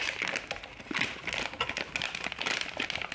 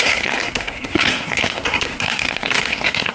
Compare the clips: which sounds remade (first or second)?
second